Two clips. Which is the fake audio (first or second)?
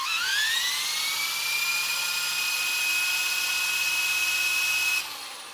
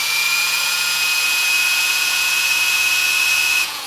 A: second